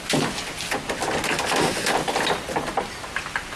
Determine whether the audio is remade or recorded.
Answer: recorded